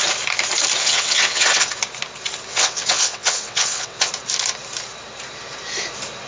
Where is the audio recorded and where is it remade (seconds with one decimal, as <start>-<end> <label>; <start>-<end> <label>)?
0.0-0.8 recorded; 0.8-1.7 remade; 1.7-2.5 recorded; 2.5-4.1 remade; 4.1-6.3 recorded